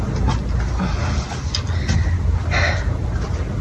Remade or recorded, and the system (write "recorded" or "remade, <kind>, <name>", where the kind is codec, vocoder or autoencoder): recorded